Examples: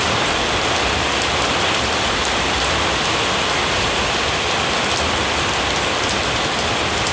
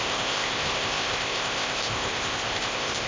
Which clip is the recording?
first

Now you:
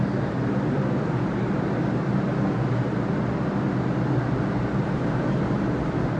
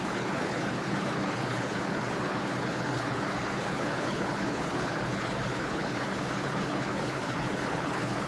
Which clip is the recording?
first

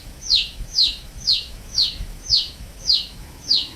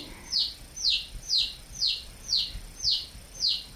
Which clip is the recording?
second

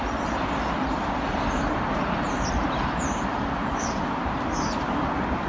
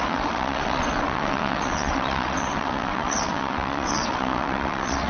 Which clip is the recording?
first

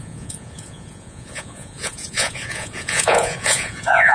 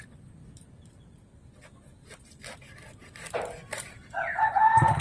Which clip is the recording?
second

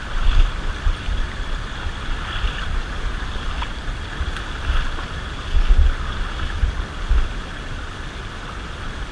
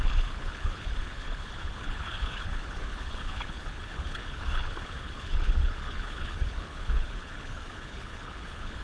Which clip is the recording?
first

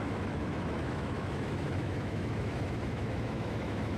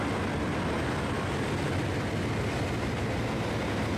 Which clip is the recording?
second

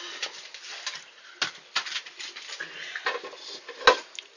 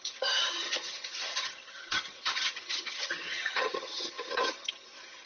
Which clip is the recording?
first